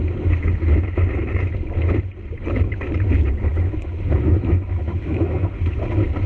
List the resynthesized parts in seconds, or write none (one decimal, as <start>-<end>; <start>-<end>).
3.5-5.5